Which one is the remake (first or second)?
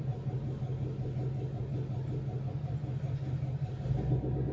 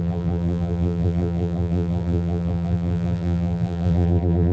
second